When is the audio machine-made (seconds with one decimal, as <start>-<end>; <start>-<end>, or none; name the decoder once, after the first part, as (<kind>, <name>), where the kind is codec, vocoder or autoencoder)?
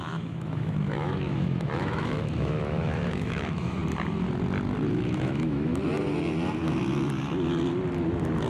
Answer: 0.0-3.8 (autoencoder, DAC-VAE); 4.9-5.7